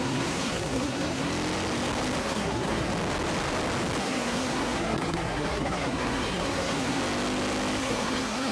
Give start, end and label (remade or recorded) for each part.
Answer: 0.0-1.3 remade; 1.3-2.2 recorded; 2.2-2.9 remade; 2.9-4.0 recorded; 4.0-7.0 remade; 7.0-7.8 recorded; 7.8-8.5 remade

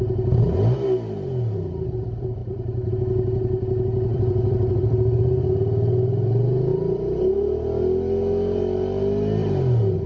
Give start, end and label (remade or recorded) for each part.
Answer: 0.0-2.4 recorded; 2.4-2.9 remade; 2.9-4.1 recorded; 4.1-5.2 remade; 5.2-6.7 recorded; 6.7-7.2 remade; 7.2-10.1 recorded

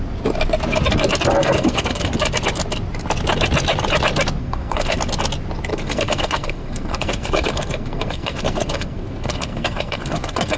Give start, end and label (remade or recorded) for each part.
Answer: 0.0-1.4 recorded; 1.4-2.1 remade; 2.1-4.4 recorded; 4.4-5.0 remade; 5.0-5.7 recorded; 5.7-10.6 remade